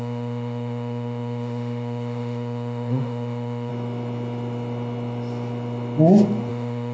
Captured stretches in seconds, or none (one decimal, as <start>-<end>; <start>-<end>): 3.7-6.5